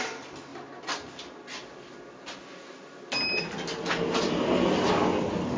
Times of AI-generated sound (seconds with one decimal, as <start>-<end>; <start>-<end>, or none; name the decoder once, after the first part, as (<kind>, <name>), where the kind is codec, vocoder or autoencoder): none